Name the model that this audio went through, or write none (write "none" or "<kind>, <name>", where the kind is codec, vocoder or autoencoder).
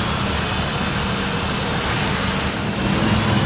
none